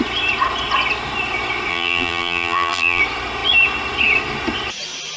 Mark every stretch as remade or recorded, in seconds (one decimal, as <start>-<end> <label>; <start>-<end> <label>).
0.0-1.7 recorded; 1.7-3.0 remade; 3.0-5.2 recorded